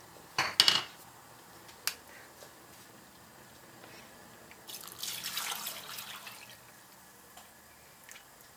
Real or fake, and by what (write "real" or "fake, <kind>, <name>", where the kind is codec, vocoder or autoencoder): real